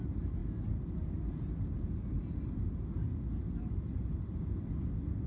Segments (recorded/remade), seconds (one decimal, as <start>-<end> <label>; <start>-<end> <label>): 0.0-5.3 recorded